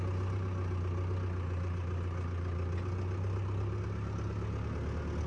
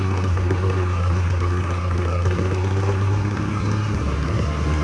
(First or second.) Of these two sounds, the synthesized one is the second